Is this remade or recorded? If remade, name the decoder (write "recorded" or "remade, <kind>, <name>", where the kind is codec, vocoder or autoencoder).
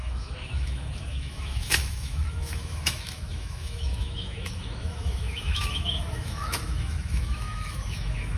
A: remade, autoencoder, DAC-VAE